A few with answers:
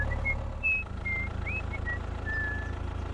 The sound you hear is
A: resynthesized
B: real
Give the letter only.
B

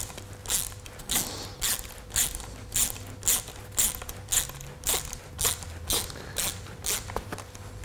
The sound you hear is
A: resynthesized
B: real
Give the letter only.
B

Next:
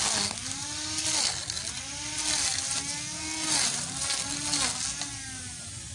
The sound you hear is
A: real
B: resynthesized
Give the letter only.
A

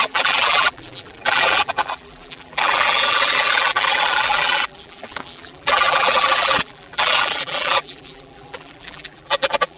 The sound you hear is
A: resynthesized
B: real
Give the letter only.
A